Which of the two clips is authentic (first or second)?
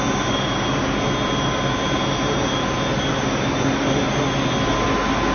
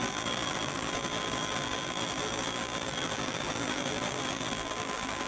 first